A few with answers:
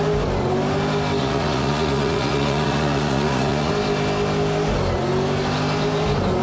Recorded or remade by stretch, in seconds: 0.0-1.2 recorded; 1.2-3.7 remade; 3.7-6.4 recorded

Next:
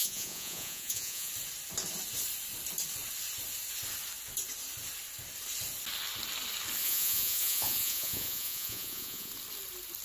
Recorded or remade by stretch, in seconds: 0.0-1.3 remade; 1.3-6.8 recorded; 6.8-9.3 remade; 9.3-10.0 recorded

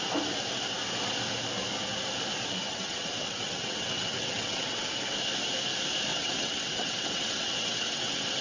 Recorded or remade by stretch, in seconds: 0.0-2.7 recorded; 2.7-4.9 remade; 4.9-6.1 recorded; 6.1-8.4 remade

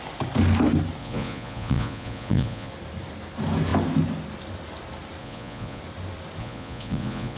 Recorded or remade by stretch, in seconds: 0.0-1.0 recorded; 1.0-2.7 remade; 2.7-5.2 recorded; 5.2-5.8 remade; 5.8-6.4 recorded; 6.4-7.4 remade

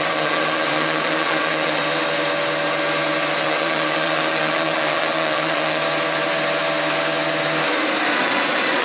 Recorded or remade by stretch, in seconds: 0.0-1.8 remade; 1.8-3.4 recorded; 3.4-5.8 remade; 5.8-8.1 recorded; 8.1-8.8 remade

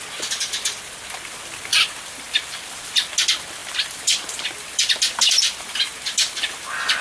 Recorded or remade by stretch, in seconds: 0.0-1.7 recorded; 1.7-3.1 remade; 3.1-3.6 recorded; 3.6-7.0 remade

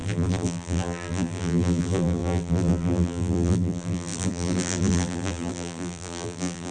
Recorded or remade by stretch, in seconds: 0.0-6.7 remade

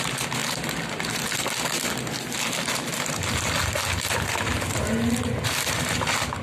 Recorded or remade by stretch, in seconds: 0.0-6.4 recorded